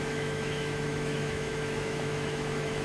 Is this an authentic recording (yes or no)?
no